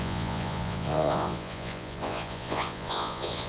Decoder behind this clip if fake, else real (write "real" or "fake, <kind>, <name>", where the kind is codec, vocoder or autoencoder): fake, vocoder, Vocos